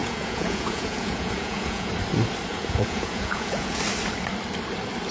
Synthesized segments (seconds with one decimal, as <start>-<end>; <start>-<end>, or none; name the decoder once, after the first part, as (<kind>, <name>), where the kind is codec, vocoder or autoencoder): 0.0-1.9 (vocoder, Vocos); 2.5-3.8